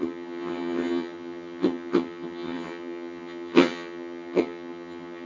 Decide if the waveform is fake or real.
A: fake